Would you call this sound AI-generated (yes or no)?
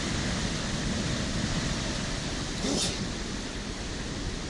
no